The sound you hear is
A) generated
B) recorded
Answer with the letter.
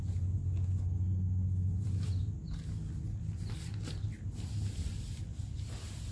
B